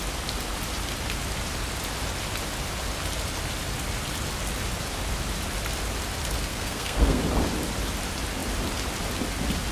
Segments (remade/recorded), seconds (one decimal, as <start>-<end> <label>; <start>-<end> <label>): 0.0-6.5 recorded; 6.5-7.2 remade; 7.2-9.7 recorded